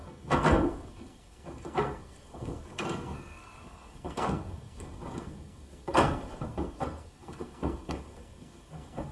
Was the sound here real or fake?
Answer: fake